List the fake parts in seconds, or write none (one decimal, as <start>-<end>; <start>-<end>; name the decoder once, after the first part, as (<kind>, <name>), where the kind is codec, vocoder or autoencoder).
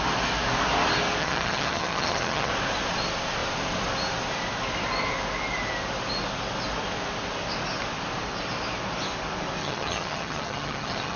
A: 1.2-2.5 (vocoder, HiFi-GAN); 9.6-11.2